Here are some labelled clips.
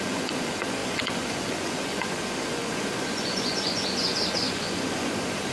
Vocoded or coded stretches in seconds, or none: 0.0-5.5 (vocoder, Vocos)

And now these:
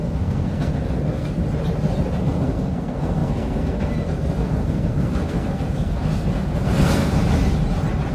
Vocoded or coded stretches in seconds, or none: 0.0-1.4 (codec, SNAC); 2.2-7.2

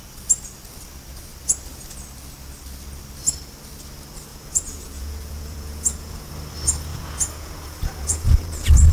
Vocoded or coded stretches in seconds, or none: 4.3-6.3 (vocoder, Vocos); 6.9-8.9

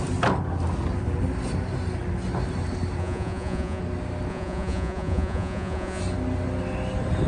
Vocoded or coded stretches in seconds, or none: 3.0-3.8 (vocoder, Vocos); 4.3-6.0